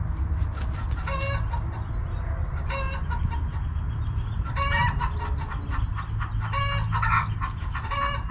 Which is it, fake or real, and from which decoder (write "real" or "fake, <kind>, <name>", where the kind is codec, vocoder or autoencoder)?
real